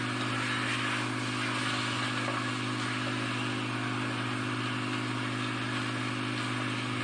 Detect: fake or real real